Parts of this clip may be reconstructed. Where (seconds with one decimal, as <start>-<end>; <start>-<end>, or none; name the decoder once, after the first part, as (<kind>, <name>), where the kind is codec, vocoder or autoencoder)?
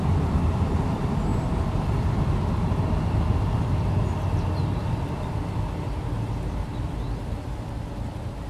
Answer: none